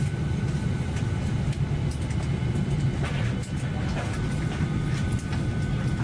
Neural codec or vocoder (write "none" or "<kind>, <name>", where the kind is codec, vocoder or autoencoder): none